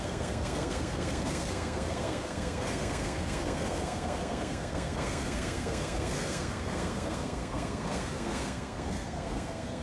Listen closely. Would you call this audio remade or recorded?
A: remade